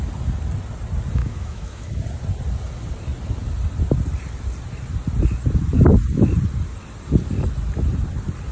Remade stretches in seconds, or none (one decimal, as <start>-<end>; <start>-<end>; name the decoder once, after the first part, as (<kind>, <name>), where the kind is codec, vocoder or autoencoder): 1.2-2.0 (autoencoder, DAC-VAE)